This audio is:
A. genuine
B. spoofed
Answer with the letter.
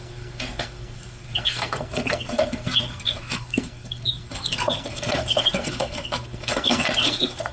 B